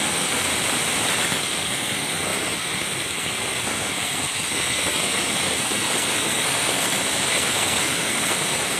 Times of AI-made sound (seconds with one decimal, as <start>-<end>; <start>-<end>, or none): 0.0-0.5; 1.2-8.8